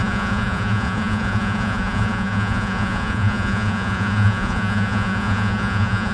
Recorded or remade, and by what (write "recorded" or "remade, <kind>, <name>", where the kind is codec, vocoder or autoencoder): remade, vocoder, Vocos